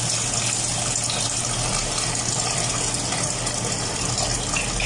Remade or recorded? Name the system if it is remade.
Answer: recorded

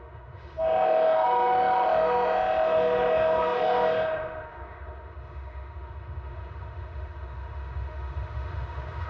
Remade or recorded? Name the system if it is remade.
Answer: remade, autoencoder, DAC-VAE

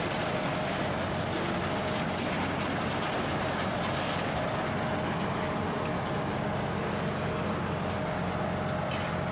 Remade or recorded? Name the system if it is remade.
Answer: recorded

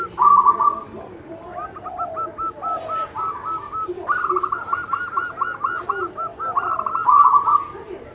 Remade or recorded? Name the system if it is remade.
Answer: recorded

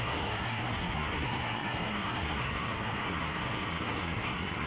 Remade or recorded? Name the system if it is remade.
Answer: remade, codec, SNAC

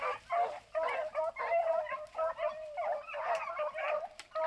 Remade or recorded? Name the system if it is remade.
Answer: recorded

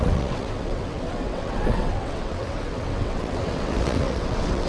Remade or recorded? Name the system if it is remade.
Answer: remade, vocoder, WaveNeXt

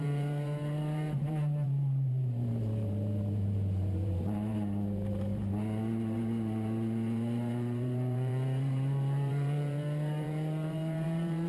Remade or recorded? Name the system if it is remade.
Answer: remade, vocoder, BigVGAN v2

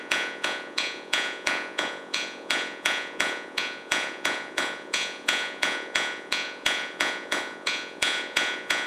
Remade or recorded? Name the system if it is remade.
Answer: remade, vocoder, Vocos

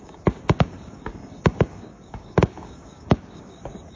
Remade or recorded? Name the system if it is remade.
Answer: remade, codec, DAC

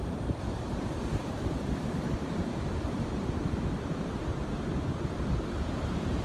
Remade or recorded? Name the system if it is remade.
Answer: remade, vocoder, BigVGAN v2